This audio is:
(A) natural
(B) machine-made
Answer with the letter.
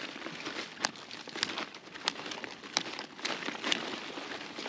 A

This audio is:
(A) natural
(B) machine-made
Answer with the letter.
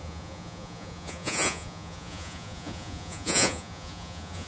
B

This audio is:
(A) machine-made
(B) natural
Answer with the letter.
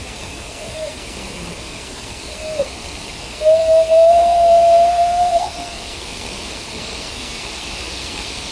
A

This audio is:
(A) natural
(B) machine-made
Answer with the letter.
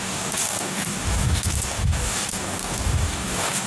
B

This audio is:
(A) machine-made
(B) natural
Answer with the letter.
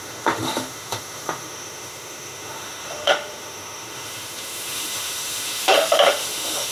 A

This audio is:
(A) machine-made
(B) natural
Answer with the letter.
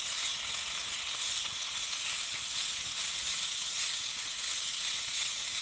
A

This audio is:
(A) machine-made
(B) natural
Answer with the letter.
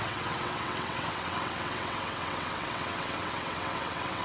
A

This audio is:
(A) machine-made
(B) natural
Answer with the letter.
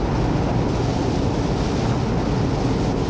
B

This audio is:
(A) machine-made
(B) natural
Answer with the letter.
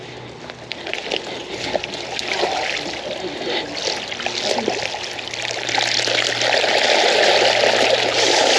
B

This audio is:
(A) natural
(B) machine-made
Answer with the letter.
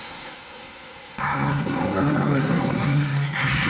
B